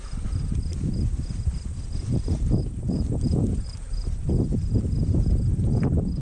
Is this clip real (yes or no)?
yes